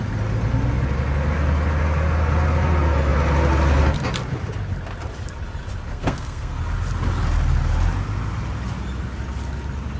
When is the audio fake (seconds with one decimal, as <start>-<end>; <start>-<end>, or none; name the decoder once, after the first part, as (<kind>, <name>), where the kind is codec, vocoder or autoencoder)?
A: 5.9-6.6 (codec, SNAC)